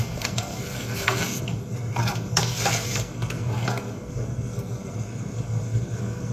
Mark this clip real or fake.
fake